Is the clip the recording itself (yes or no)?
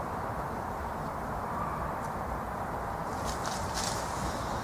no